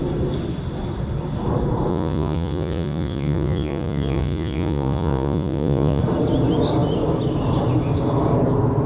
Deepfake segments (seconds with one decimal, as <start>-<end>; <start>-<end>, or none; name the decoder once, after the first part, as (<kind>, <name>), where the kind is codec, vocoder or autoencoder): 1.9-6.0 (vocoder, Vocos)